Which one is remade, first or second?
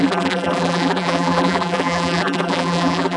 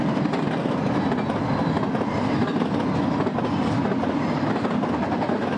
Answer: first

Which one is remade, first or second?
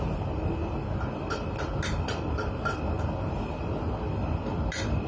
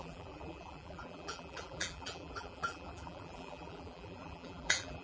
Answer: second